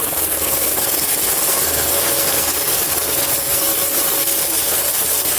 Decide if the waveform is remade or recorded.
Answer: remade